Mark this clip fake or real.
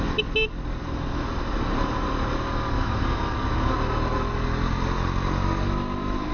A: real